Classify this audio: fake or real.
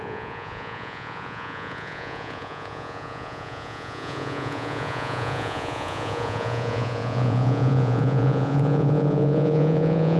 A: fake